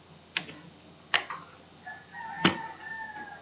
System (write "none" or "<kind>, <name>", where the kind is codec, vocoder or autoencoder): none